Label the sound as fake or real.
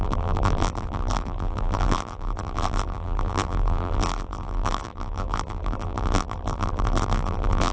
fake